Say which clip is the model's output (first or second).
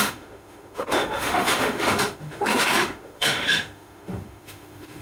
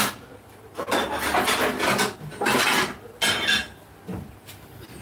first